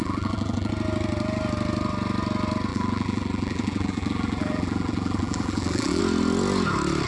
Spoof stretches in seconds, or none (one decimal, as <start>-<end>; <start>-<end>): 0.0-0.7; 2.7-6.0